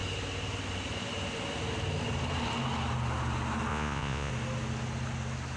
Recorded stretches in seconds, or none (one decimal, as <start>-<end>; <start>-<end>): 0.0-3.7; 4.3-5.6

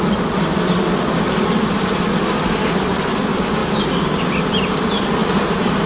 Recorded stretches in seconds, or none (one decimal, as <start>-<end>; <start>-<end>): 0.0-5.9

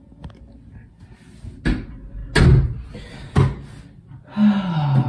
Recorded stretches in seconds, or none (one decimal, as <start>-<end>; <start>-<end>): 0.0-5.1